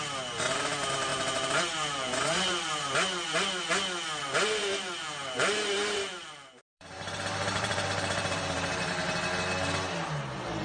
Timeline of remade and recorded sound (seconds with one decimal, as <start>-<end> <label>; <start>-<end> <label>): 0.0-1.1 recorded; 1.1-3.6 remade; 3.6-4.2 recorded; 4.2-8.9 remade; 8.9-10.6 recorded